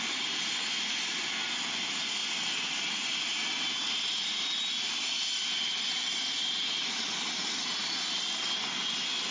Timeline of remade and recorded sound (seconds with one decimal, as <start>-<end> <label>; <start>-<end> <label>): 0.0-9.3 recorded